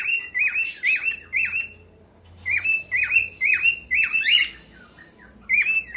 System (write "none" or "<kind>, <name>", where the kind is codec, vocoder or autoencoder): vocoder, BigVGAN v2